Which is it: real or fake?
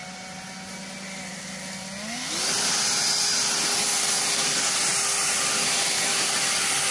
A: real